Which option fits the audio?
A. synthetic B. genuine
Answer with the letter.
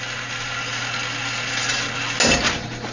B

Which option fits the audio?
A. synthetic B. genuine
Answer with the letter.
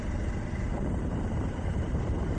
A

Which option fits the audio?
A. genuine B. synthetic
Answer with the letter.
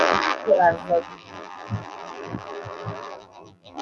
B